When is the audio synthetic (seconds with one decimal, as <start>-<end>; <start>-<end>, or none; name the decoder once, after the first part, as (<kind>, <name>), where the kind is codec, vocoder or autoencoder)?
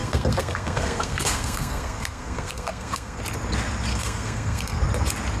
0.0-3.2 (codec, SNAC); 3.9-4.8